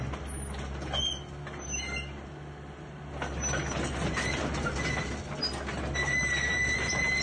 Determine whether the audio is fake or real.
real